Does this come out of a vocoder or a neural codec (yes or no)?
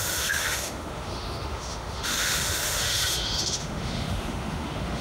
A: yes